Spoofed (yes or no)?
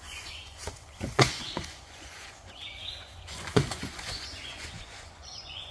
yes